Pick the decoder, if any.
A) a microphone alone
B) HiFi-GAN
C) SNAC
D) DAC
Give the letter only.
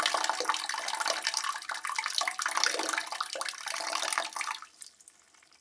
A